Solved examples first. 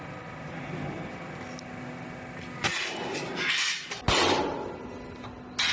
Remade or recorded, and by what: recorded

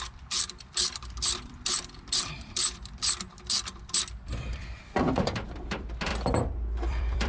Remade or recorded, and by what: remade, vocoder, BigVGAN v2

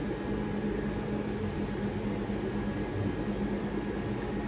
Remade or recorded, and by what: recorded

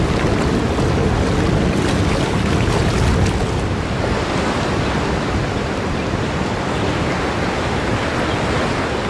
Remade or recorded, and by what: recorded